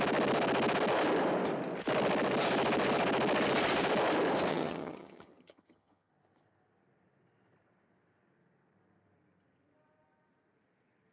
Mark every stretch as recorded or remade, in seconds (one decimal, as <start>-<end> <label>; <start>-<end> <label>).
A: 0.0-4.5 recorded; 4.5-6.1 remade; 6.1-11.1 recorded